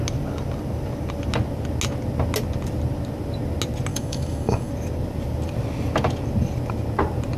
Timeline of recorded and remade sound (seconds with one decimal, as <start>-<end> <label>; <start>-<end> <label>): 0.0-3.9 recorded; 3.9-4.7 remade; 4.7-7.4 recorded